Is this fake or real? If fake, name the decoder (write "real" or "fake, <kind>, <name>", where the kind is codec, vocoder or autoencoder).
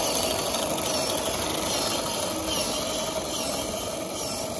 real